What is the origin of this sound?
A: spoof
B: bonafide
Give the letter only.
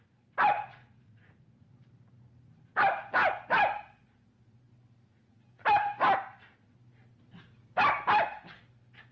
B